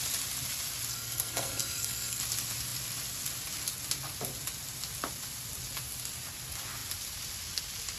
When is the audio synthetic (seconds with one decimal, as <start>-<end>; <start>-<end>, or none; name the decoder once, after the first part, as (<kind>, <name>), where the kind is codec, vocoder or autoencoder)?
0.9-2.2 (codec, SNAC)